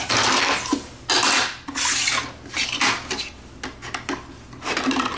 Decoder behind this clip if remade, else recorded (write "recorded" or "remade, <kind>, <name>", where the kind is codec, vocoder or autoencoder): recorded